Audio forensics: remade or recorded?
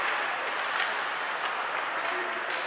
recorded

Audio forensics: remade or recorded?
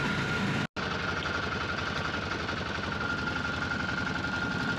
recorded